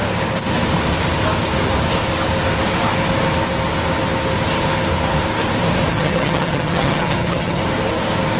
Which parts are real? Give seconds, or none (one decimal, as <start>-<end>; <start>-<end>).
0.0-5.9; 7.6-8.4

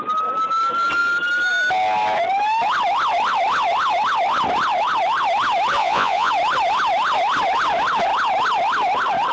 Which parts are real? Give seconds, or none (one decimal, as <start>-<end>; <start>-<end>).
0.0-5.8; 6.3-9.3

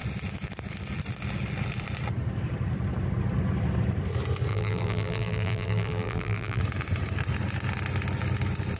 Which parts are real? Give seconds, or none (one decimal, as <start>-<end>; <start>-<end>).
0.0-4.5; 6.6-8.8

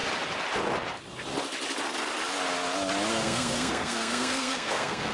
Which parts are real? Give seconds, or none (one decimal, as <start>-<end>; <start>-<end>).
0.0-3.1